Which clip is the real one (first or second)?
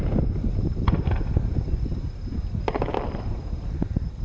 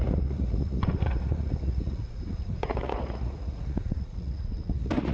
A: first